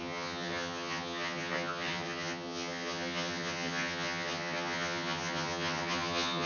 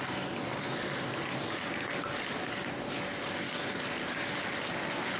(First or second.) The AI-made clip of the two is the first